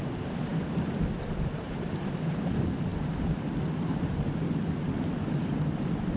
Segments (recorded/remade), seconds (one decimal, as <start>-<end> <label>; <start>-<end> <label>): 0.0-2.9 remade; 2.9-5.8 recorded; 5.8-6.2 remade